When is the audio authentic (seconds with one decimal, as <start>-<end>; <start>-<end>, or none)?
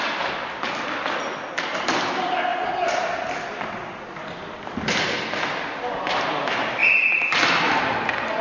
0.0-2.5; 5.9-6.8; 7.8-8.4